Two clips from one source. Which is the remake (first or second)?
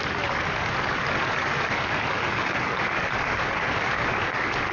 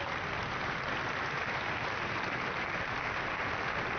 first